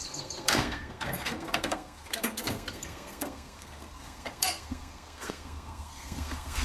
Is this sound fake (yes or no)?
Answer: yes